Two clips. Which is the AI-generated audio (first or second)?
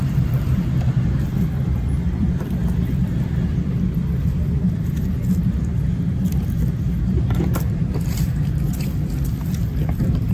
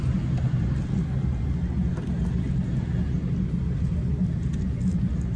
first